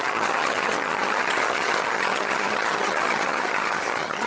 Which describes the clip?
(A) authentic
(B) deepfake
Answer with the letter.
B